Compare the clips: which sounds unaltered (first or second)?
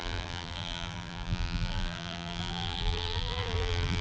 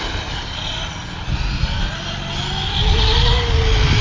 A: second